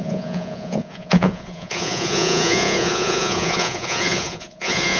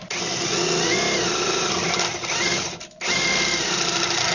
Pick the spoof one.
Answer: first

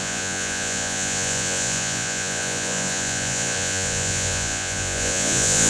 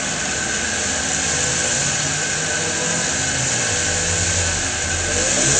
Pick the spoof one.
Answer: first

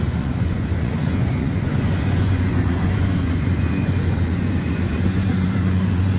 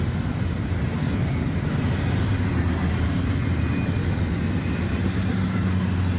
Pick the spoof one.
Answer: first